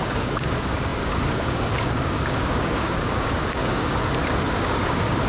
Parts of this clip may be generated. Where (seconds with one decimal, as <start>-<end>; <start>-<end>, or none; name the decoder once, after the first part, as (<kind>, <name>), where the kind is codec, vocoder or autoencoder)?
0.0-3.9 (codec, DAC); 4.4-5.3